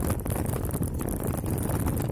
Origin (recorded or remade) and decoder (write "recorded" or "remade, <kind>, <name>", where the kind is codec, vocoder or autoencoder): recorded